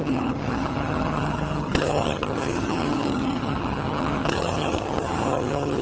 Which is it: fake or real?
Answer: fake